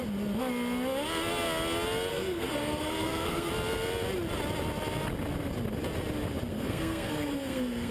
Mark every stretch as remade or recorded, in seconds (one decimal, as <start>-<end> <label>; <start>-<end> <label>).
0.0-2.1 recorded; 2.1-3.5 remade; 3.5-6.5 recorded; 6.5-7.9 remade